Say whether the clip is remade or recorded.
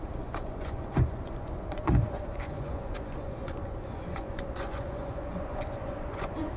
remade